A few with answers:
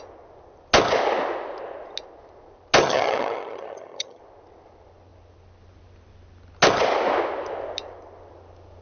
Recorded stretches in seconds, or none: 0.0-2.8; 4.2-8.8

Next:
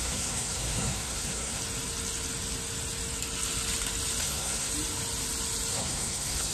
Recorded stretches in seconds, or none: 1.6-4.2; 4.7-5.7

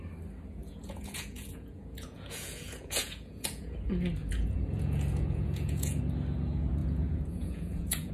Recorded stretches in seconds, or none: 0.0-0.6; 3.7-4.2; 6.0-6.8

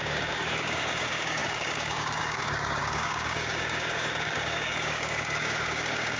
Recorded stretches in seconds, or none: none

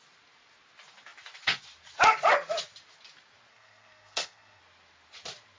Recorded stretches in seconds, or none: 0.0-3.5; 4.6-5.6

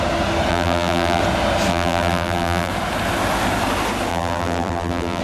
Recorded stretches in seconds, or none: 0.0-0.5; 1.2-1.7; 2.7-4.1

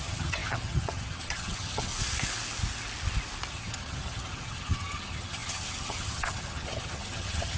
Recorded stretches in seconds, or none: 1.9-3.5